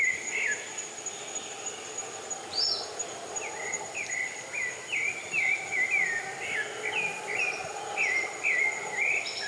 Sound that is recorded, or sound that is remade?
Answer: recorded